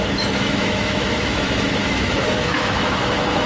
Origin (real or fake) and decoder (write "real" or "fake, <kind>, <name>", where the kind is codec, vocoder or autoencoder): fake, autoencoder, DAC-VAE